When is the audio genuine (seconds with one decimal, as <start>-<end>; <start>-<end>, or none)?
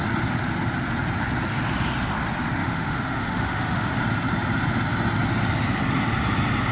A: 0.0-2.6; 4.0-6.7